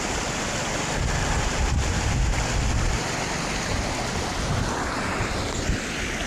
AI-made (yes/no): no